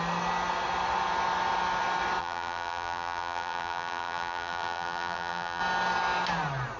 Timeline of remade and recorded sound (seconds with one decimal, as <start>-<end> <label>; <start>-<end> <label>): 0.0-2.2 recorded; 2.2-5.6 remade; 5.6-6.8 recorded